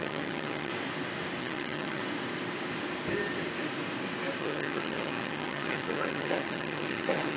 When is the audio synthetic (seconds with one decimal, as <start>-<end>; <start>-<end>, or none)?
0.0-0.7; 1.4-2.0; 4.4-7.4